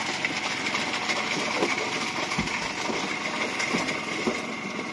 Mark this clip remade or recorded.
recorded